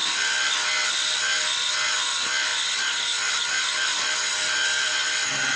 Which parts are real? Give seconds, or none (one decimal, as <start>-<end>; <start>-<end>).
0.0-5.6